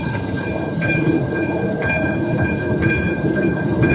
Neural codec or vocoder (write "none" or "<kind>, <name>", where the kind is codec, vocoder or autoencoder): codec, HILCodec